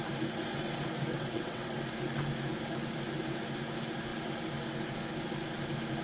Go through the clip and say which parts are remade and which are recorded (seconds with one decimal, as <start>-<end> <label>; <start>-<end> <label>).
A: 0.0-1.1 recorded; 1.1-1.8 remade; 1.8-6.0 recorded